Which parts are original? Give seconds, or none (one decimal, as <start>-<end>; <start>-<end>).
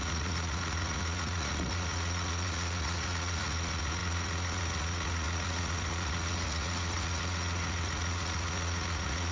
none